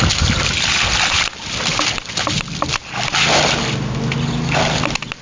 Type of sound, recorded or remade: recorded